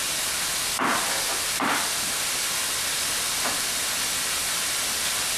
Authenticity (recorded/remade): recorded